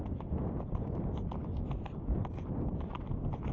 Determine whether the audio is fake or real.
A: real